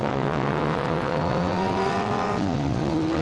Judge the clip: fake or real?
fake